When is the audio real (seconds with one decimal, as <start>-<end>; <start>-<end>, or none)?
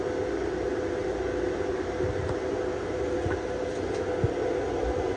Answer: 0.0-5.2